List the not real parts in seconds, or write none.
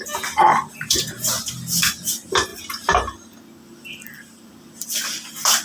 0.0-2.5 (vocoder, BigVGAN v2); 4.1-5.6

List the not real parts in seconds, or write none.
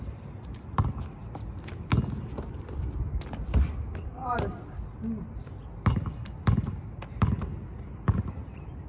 none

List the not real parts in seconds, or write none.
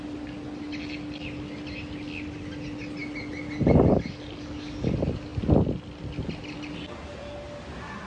none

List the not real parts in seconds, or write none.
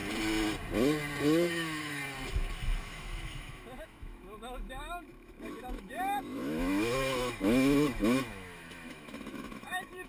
1.2-2.0 (autoencoder, DAC-VAE); 2.8-10.1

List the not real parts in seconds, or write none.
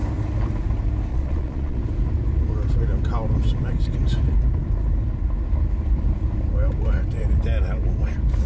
1.1-1.8 (vocoder, Vocos)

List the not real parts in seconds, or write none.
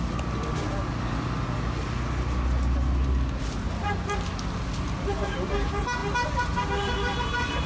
none